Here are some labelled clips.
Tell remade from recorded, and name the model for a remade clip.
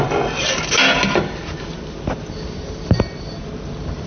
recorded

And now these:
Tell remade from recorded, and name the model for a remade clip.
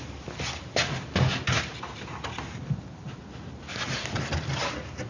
recorded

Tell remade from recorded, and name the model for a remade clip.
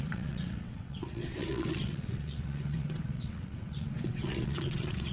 remade, vocoder, WaveNeXt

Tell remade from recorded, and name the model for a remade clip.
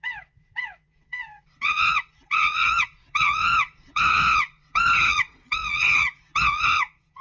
remade, vocoder, WaveNeXt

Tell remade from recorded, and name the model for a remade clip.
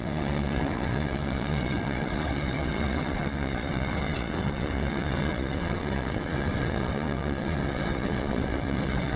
remade, vocoder, WaveNeXt